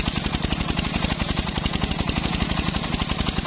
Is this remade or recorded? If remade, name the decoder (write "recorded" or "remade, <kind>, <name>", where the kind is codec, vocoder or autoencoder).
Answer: recorded